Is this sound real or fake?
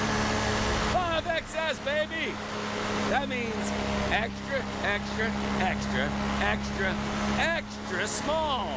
real